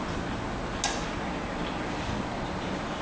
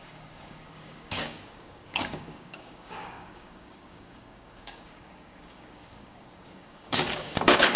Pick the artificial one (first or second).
second